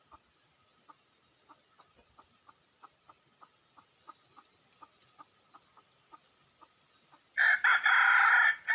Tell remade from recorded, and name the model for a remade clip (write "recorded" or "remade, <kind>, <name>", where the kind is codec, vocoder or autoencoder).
recorded